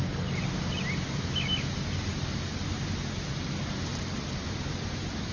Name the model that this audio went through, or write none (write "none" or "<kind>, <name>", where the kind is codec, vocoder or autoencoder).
none